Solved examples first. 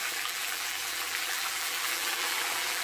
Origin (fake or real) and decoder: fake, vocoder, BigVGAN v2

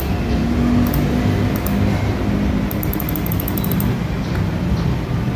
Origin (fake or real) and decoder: real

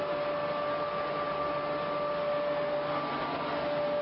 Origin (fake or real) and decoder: real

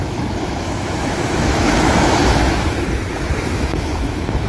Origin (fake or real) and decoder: fake, autoencoder, DAC-VAE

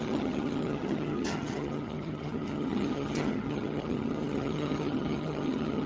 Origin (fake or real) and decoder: fake, vocoder, HiFi-GAN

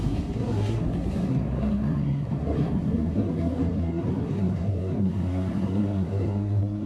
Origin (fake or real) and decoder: fake, codec, SNAC